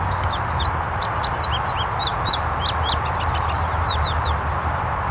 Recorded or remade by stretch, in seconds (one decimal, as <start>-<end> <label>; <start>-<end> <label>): 0.0-2.1 recorded; 2.1-4.3 remade; 4.3-5.1 recorded